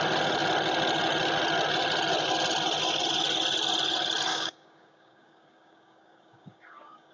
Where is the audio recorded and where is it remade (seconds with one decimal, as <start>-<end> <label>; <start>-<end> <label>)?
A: 0.0-4.3 recorded; 4.3-7.1 remade